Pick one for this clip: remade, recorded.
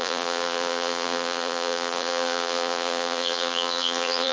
remade